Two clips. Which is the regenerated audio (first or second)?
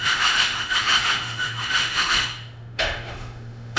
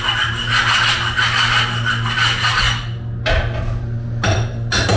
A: first